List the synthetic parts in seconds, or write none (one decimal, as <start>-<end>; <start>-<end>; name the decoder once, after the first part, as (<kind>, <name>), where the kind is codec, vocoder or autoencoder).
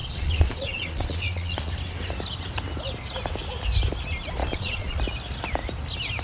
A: 0.0-1.7 (vocoder, Vocos); 4.4-5.0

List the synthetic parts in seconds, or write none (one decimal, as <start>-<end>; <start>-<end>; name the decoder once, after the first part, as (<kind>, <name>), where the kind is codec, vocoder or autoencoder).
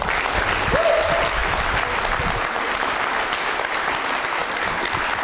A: none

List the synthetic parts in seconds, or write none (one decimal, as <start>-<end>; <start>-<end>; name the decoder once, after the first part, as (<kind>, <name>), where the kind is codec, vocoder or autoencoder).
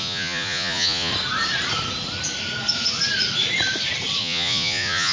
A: 0.0-1.1 (vocoder, Vocos); 4.2-5.1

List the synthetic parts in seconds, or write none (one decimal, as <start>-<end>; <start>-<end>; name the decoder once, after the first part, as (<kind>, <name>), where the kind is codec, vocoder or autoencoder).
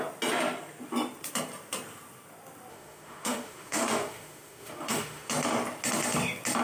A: 2.7-5.3 (autoencoder, DAC-VAE)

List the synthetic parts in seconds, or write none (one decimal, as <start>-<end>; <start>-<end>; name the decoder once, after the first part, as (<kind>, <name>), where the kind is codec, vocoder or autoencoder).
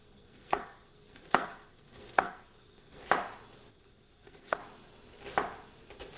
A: 0.0-3.0 (codec, SNAC); 3.7-4.6